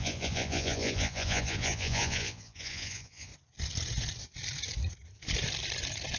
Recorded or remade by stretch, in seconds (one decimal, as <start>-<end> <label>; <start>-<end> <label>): 0.0-3.3 remade; 3.3-6.2 recorded

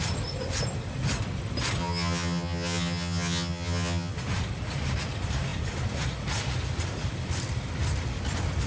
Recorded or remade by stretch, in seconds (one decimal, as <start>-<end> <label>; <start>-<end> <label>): 0.0-1.8 recorded; 1.8-4.1 remade; 4.1-8.7 recorded

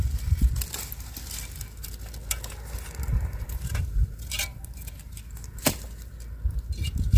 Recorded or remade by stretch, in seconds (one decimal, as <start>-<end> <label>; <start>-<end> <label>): 0.0-3.1 recorded; 3.1-4.9 remade; 4.9-7.2 recorded

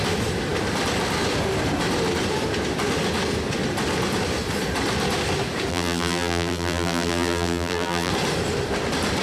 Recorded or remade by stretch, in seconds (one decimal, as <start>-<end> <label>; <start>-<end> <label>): 0.0-5.7 recorded; 5.7-8.1 remade; 8.1-9.2 recorded

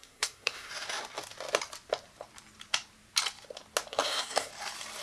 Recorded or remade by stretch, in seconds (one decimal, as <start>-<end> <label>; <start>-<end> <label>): 0.0-0.7 remade; 0.7-3.9 recorded; 3.9-4.5 remade; 4.5-5.0 recorded

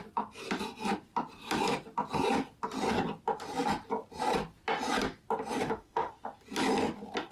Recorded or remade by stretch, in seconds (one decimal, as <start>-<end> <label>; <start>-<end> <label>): 0.0-5.6 recorded; 5.6-6.1 remade; 6.1-7.3 recorded

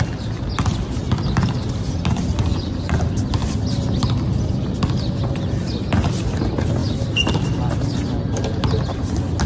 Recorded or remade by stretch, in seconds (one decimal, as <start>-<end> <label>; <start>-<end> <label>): 0.0-2.4 recorded; 2.4-3.0 remade; 3.0-9.5 recorded